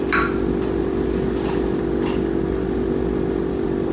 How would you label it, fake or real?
real